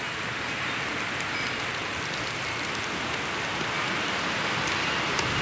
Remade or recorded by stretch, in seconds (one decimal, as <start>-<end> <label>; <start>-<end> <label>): 0.0-5.4 recorded